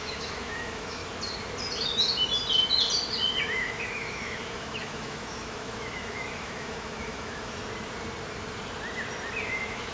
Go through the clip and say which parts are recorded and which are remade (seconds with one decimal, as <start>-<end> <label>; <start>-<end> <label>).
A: 0.0-1.0 remade; 1.0-3.4 recorded; 3.4-7.6 remade; 7.6-9.5 recorded; 9.5-9.9 remade